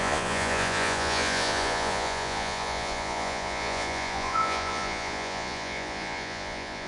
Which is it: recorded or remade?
remade